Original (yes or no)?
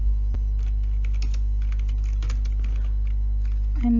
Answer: yes